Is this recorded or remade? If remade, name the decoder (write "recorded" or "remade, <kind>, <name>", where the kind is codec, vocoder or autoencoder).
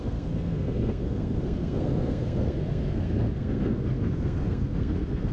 remade, codec, SNAC